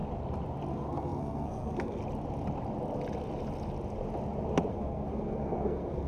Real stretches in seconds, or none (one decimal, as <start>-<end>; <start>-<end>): 0.0-0.7; 2.0-4.7